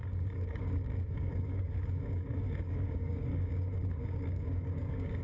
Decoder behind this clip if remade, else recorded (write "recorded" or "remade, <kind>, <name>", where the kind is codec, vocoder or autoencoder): remade, codec, DAC